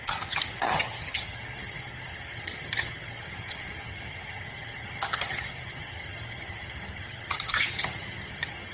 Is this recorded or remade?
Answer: remade